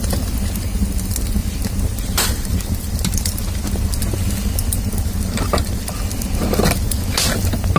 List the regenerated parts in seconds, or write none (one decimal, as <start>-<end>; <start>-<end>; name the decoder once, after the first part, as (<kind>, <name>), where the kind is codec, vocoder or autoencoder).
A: 1.4-3.4 (vocoder, BigVGAN v2)

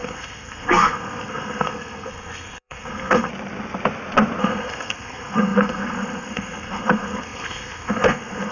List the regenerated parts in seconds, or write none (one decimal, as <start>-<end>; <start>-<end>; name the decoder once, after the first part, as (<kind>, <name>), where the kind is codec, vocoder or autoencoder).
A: 0.0-3.3 (codec, SNAC); 4.4-8.5

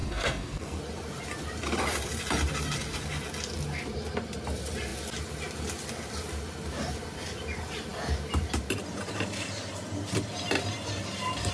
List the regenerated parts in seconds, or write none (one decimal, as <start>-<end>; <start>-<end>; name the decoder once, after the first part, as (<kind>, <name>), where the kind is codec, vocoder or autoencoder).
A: 0.0-0.8 (codec, SNAC)

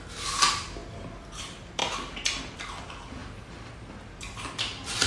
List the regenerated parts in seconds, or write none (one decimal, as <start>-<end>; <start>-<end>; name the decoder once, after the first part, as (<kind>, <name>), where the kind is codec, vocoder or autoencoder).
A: none